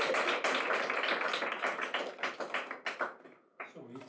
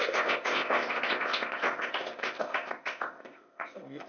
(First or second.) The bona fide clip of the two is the first